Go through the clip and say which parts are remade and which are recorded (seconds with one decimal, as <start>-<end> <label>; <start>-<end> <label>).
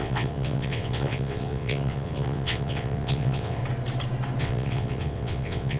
0.0-3.6 remade; 3.6-4.4 recorded; 4.4-5.8 remade